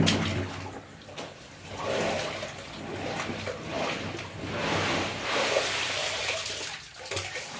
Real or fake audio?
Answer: real